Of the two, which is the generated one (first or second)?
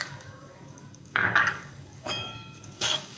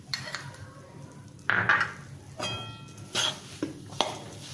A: first